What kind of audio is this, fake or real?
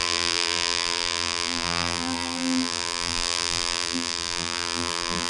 fake